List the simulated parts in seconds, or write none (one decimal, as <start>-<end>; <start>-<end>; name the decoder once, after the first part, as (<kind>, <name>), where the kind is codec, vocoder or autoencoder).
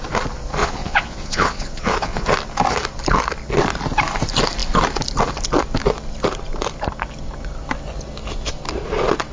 0.6-2.3 (vocoder, Vocos)